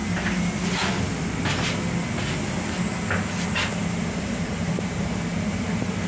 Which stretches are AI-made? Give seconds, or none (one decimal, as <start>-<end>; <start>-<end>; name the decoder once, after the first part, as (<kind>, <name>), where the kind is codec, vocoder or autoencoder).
3.7-6.1 (vocoder, BigVGAN v2)